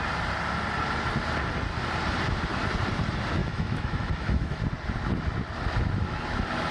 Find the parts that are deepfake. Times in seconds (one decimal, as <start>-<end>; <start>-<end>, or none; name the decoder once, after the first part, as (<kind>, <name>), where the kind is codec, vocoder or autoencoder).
3.4-4.6 (autoencoder, DAC-VAE)